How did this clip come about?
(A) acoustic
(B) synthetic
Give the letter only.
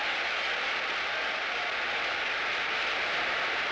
A